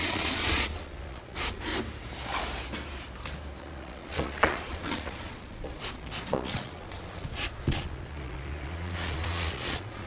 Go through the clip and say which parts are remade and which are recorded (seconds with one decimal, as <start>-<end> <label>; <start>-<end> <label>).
0.0-1.7 remade; 1.7-3.6 recorded; 3.6-10.1 remade